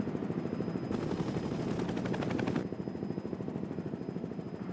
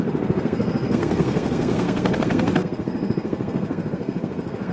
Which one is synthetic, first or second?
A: second